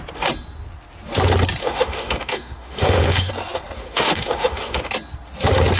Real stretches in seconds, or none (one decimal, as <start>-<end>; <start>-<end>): 0.0-1.6; 3.3-3.8; 4.9-5.8